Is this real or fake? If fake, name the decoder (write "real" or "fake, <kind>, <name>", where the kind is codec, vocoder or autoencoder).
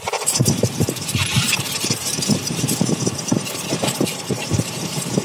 fake, vocoder, BigVGAN v2